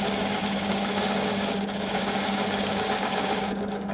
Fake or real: fake